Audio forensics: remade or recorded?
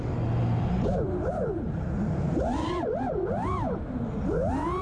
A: recorded